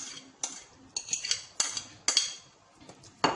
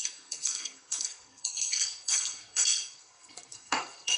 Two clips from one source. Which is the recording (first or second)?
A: first